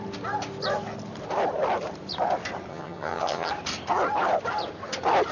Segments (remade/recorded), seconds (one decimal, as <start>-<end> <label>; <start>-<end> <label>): 0.0-2.7 recorded; 2.7-3.5 remade; 3.5-5.3 recorded